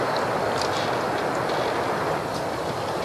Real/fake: real